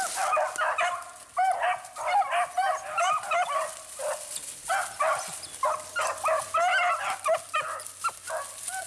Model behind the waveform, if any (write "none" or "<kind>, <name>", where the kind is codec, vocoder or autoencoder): none